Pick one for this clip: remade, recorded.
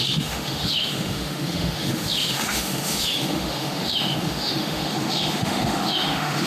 remade